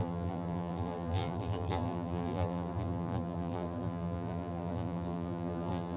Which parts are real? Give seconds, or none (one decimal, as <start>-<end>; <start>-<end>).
none